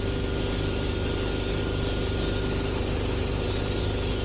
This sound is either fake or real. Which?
real